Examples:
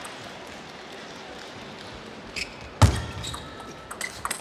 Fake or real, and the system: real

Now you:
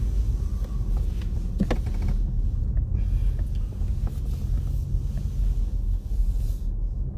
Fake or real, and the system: real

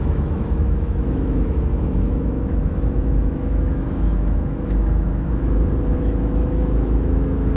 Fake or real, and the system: fake, autoencoder, DAC-VAE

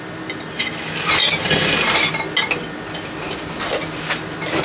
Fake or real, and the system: real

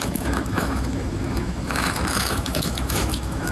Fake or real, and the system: fake, autoencoder, DAC-VAE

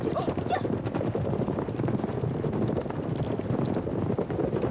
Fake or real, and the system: real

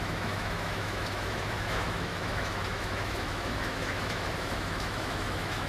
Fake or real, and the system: fake, autoencoder, DAC-VAE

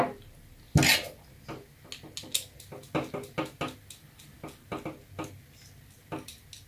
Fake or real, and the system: real